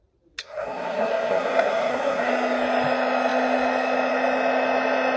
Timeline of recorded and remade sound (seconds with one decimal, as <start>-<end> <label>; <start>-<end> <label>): 0.0-0.4 recorded; 0.4-2.3 remade; 2.3-5.2 recorded